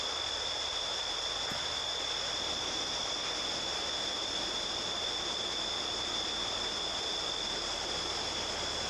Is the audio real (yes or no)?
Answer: yes